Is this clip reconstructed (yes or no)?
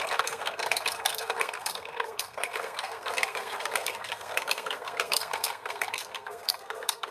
yes